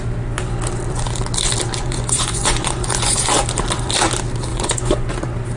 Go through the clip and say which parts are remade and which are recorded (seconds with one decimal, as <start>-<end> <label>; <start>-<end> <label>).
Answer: 0.0-1.8 recorded; 1.8-3.3 remade; 3.3-4.5 recorded; 4.5-5.1 remade; 5.1-5.6 recorded